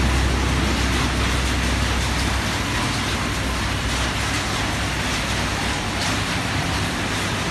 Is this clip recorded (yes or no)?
yes